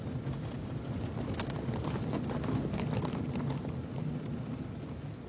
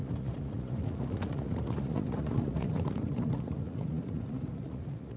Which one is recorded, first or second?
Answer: first